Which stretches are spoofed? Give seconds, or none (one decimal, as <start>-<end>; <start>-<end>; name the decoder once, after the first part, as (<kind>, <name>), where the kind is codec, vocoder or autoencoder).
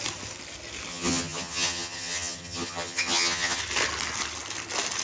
0.9-3.6 (vocoder, HiFi-GAN)